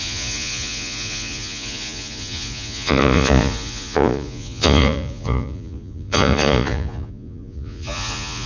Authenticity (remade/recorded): remade